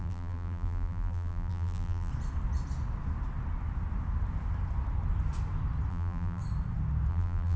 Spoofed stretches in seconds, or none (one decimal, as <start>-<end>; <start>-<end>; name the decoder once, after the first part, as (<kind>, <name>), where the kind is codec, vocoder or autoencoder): 0.0-2.1 (vocoder, BigVGAN v2); 5.9-6.4; 7.1-7.6